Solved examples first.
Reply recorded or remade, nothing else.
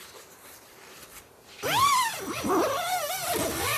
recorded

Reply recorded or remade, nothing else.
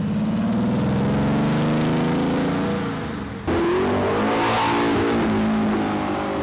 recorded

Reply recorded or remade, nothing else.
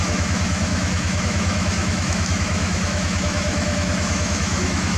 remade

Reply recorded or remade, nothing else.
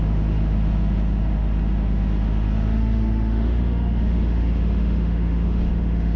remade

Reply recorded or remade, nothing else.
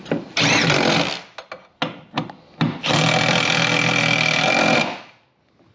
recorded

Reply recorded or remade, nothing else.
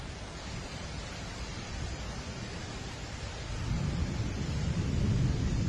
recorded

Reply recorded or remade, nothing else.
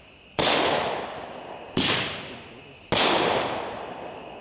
recorded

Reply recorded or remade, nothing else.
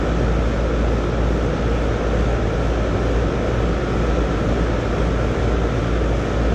recorded